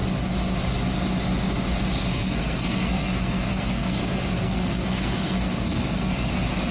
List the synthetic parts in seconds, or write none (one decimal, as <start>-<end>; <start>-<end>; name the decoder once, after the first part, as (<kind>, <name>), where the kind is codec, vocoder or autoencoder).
2.1-6.1 (codec, SNAC)